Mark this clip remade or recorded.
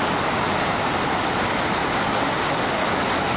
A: recorded